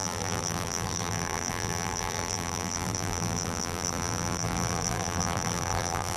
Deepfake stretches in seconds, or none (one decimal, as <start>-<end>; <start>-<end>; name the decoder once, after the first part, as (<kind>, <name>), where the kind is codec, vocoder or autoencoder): 0.0-6.2 (vocoder, BigVGAN v2)